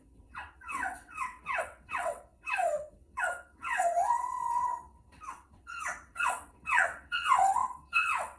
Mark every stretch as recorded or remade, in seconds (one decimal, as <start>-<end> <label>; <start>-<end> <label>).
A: 0.0-8.4 remade